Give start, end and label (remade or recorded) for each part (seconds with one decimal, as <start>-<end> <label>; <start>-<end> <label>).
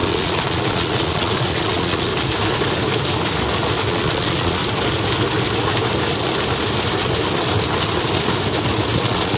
0.0-2.1 remade; 2.1-3.9 recorded; 3.9-4.6 remade; 4.6-9.0 recorded; 9.0-9.4 remade